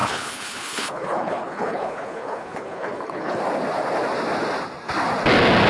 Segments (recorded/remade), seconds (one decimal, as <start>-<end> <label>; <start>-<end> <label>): 0.0-3.4 remade; 3.4-5.7 recorded